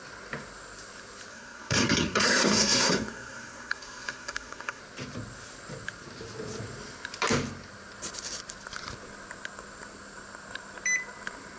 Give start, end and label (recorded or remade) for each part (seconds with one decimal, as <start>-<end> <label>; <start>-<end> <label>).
0.0-1.3 recorded; 1.3-4.8 remade; 4.8-11.6 recorded